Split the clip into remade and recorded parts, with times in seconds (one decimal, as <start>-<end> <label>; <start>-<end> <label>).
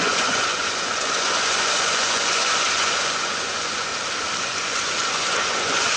0.0-3.9 remade; 3.9-4.4 recorded; 4.4-6.0 remade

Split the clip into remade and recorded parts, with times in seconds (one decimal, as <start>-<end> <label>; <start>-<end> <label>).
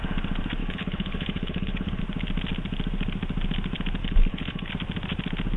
0.0-0.6 recorded; 0.6-2.0 remade; 2.0-4.0 recorded; 4.0-4.7 remade; 4.7-5.6 recorded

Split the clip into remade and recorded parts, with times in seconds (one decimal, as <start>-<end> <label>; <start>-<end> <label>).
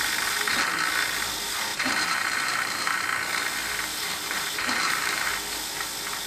0.0-1.7 recorded; 1.7-3.0 remade; 3.0-3.9 recorded; 3.9-5.3 remade; 5.3-6.3 recorded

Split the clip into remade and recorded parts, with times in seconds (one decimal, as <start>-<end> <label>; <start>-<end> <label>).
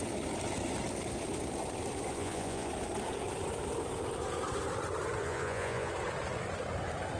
0.0-2.1 recorded; 2.1-2.7 remade; 2.7-5.2 recorded; 5.2-5.9 remade; 5.9-7.2 recorded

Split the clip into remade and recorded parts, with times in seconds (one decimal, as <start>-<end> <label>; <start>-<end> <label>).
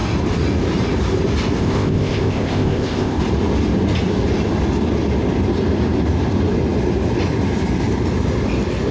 0.0-1.6 recorded; 1.6-3.2 remade; 3.2-8.9 recorded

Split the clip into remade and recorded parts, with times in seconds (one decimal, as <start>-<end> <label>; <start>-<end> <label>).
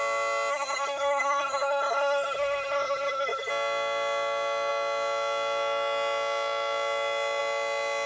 0.0-0.5 recorded; 0.5-3.5 remade; 3.5-8.1 recorded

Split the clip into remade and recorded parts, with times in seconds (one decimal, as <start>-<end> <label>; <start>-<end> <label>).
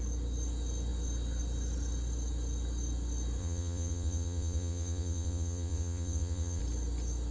0.0-3.4 recorded; 3.4-6.6 remade; 6.6-7.3 recorded